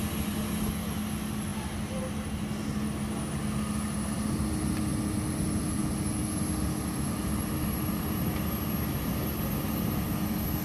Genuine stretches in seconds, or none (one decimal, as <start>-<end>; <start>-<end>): 0.0-10.6